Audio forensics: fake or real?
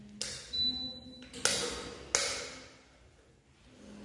real